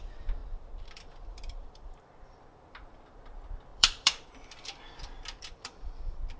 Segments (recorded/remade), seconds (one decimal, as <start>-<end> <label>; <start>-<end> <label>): 0.0-0.4 recorded; 0.4-2.4 remade; 2.4-3.7 recorded; 3.7-5.9 remade; 5.9-6.4 recorded